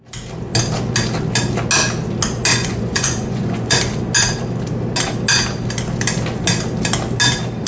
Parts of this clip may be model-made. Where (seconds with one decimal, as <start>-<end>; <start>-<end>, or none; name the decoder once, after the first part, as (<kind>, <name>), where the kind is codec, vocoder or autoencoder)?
2.5-3.8 (vocoder, Vocos)